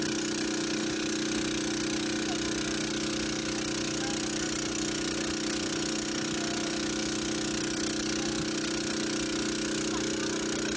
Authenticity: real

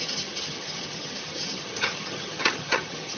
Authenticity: fake